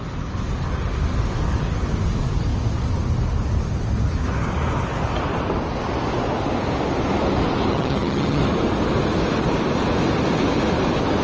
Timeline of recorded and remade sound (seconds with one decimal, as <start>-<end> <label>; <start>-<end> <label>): 0.0-7.7 recorded; 7.7-8.4 remade; 8.4-11.2 recorded